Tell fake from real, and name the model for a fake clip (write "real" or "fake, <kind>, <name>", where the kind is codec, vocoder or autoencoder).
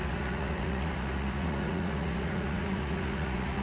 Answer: fake, vocoder, Vocos